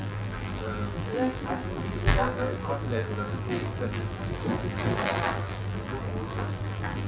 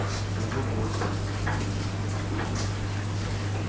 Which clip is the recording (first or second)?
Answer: second